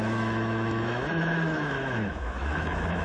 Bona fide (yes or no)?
no